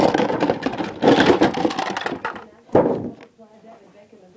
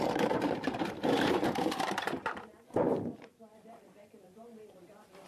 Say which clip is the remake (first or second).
second